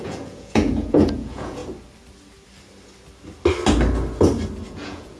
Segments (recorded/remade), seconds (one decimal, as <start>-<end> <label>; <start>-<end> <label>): 0.0-1.6 remade; 1.6-4.7 recorded; 4.7-5.2 remade